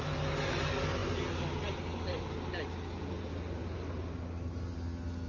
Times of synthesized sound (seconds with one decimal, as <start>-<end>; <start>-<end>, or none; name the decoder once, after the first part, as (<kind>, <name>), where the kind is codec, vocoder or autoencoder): none